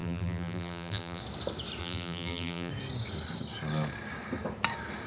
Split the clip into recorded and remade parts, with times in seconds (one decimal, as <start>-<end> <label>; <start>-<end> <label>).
0.0-1.2 remade; 1.2-1.8 recorded; 1.8-2.7 remade; 2.7-5.1 recorded

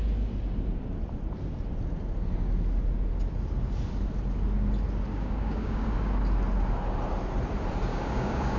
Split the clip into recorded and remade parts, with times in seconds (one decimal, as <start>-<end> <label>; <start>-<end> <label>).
0.0-5.1 recorded; 5.1-6.1 remade; 6.1-7.9 recorded; 7.9-8.6 remade

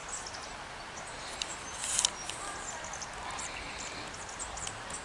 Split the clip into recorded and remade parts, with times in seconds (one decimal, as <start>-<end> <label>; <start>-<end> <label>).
0.0-5.0 recorded

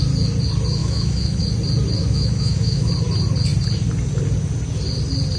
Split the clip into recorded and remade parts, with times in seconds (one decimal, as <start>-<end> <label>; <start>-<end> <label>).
0.0-0.8 recorded; 0.8-1.4 remade; 1.4-2.0 recorded; 2.0-2.9 remade; 2.9-5.4 recorded

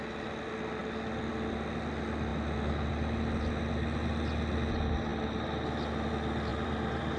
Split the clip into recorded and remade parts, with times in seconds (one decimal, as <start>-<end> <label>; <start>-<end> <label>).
0.0-6.5 recorded; 6.5-7.2 remade

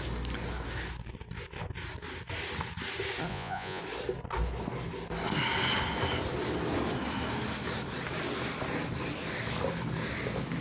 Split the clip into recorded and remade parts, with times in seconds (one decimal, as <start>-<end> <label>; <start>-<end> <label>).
0.0-3.3 recorded; 3.3-3.8 remade; 3.8-10.6 recorded

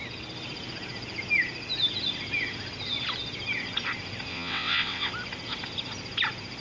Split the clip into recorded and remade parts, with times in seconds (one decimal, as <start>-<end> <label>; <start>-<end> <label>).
0.0-4.3 recorded; 4.3-5.1 remade; 5.1-6.6 recorded

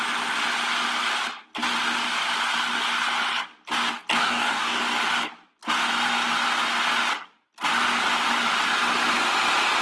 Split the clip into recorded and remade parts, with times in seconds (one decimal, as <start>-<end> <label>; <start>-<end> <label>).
0.0-4.2 recorded; 4.2-4.8 remade; 4.8-9.8 recorded